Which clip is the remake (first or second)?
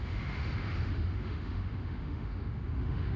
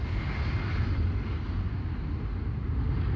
first